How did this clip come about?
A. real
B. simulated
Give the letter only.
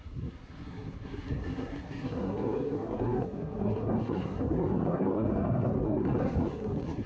B